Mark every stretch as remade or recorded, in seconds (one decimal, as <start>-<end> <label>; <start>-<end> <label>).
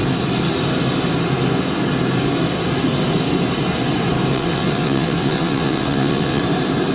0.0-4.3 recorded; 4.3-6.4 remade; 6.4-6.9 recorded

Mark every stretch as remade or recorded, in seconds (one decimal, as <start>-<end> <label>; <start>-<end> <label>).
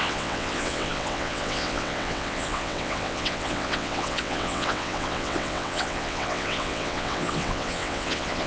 0.0-8.5 remade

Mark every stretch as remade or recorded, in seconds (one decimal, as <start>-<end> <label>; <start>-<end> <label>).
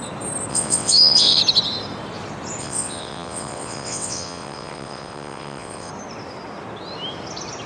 0.0-0.5 recorded; 0.5-1.4 remade; 1.4-2.6 recorded; 2.6-5.9 remade; 5.9-7.7 recorded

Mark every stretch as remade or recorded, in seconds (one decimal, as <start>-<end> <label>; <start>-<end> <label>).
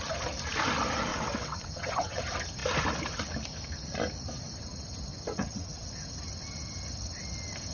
0.0-1.1 recorded; 1.1-2.2 remade; 2.2-5.1 recorded; 5.1-5.9 remade; 5.9-7.7 recorded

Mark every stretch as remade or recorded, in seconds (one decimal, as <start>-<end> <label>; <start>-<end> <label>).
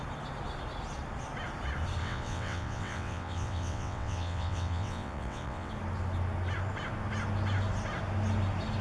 0.0-2.0 recorded; 2.0-5.7 remade; 5.7-8.8 recorded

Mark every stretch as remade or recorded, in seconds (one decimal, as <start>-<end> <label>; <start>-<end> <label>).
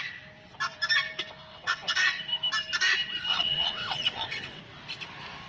0.0-1.5 recorded; 1.5-2.2 remade; 2.2-3.3 recorded; 3.3-4.6 remade; 4.6-5.5 recorded